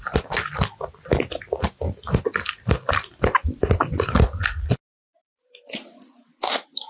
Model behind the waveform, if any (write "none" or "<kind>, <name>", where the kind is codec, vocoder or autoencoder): none